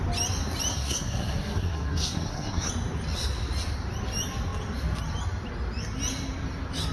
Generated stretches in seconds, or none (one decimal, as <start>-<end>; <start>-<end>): 0.7-2.7